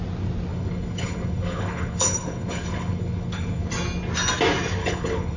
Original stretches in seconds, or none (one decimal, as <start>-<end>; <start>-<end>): 0.0-0.5; 3.7-4.8